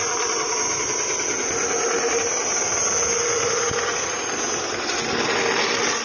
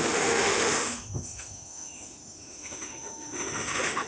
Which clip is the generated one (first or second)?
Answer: second